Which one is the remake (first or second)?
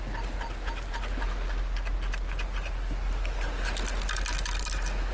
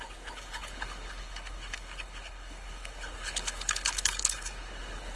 second